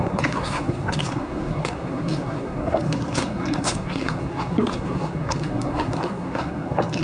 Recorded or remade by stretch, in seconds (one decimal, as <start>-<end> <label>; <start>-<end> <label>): 0.0-7.0 remade